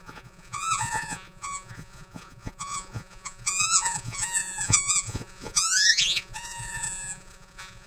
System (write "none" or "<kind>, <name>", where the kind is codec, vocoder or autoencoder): vocoder, Vocos